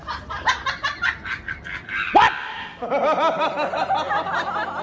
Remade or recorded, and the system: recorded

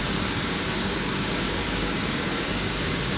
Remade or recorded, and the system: remade, codec, DAC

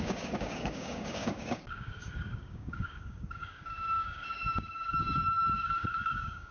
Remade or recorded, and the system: remade, codec, DAC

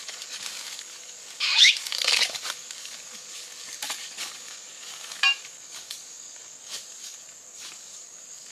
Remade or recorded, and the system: remade, codec, DAC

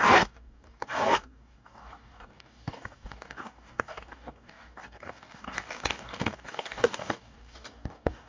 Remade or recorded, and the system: remade, codec, DAC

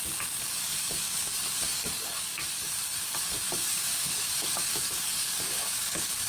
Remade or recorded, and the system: remade, codec, DAC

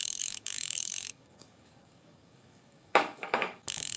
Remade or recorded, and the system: remade, codec, DAC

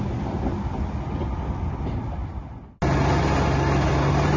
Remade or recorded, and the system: recorded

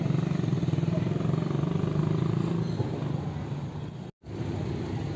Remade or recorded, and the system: recorded